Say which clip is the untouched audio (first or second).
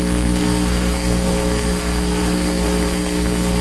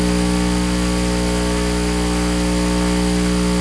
second